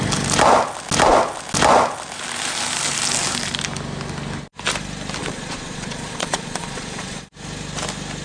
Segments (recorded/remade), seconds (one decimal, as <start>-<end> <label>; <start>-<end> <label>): 0.0-5.2 recorded; 5.2-7.2 remade; 7.2-8.2 recorded

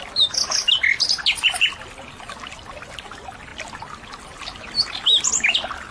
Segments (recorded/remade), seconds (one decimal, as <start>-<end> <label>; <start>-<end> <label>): 0.0-5.9 recorded

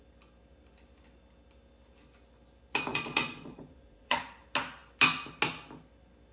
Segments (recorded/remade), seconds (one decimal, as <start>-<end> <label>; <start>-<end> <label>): 0.0-2.9 recorded; 2.9-4.2 remade; 4.2-6.3 recorded

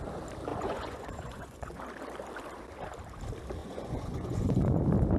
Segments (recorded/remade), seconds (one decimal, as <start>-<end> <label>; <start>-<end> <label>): 0.0-0.5 recorded; 0.5-1.8 remade; 1.8-3.6 recorded; 3.6-4.8 remade; 4.8-5.2 recorded

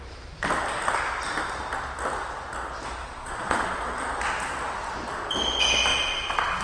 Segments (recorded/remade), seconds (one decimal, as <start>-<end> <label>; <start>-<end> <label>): 0.0-3.0 recorded; 3.0-3.8 remade; 3.8-5.9 recorded; 5.9-6.6 remade

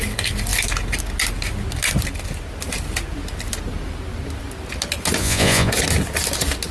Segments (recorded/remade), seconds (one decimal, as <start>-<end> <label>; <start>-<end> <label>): 0.0-5.2 recorded; 5.2-5.7 remade; 5.7-6.7 recorded

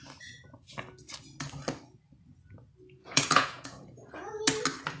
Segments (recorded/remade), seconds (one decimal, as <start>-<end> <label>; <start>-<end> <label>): 0.0-3.0 recorded; 3.0-4.4 remade; 4.4-5.0 recorded

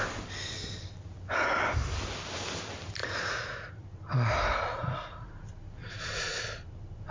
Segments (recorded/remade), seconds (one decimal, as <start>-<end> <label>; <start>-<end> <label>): 0.0-3.0 recorded; 3.0-3.7 remade; 3.7-4.7 recorded; 4.7-5.3 remade; 5.3-5.8 recorded; 5.8-6.6 remade; 6.6-7.1 recorded